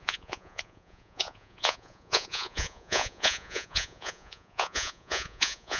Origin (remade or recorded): remade